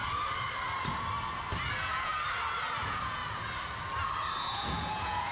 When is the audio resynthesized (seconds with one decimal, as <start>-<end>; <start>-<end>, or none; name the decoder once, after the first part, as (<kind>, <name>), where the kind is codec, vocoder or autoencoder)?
1.7-2.1 (vocoder, Vocos); 2.8-3.2; 4.4-5.3